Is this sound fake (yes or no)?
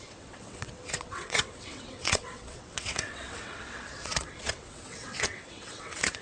yes